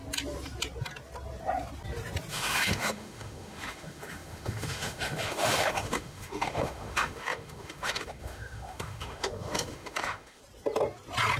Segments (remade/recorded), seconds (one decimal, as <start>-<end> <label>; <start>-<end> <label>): 0.0-2.3 recorded; 2.3-10.4 remade; 10.4-11.4 recorded